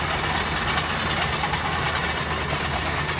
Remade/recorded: recorded